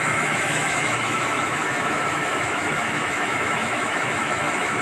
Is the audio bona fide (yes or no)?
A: no